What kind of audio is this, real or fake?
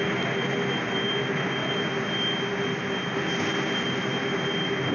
real